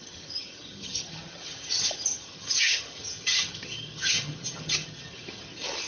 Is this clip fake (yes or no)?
yes